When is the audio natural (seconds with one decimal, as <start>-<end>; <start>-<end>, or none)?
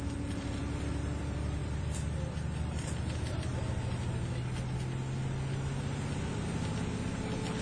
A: 3.5-7.6